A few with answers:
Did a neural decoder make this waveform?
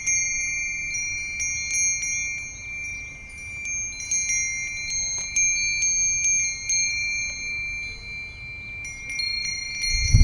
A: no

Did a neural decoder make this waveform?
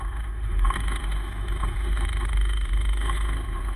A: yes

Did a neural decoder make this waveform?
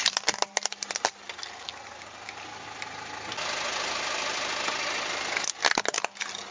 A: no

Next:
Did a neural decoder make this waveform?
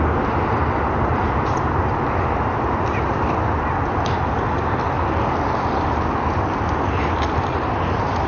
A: no